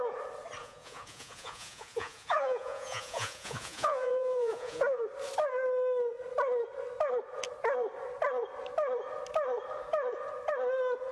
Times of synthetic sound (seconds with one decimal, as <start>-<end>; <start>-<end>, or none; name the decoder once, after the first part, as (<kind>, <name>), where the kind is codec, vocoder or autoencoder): 0.6-5.0 (vocoder, Vocos)